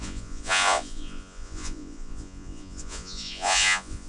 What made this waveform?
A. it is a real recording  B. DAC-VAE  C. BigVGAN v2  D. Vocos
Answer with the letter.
D